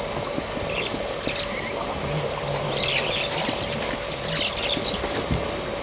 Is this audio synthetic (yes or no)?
no